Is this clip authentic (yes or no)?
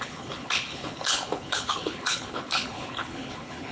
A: no